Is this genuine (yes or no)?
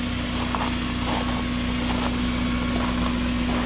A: yes